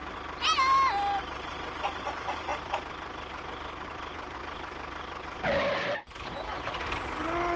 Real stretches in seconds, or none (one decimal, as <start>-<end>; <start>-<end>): 0.0-1.2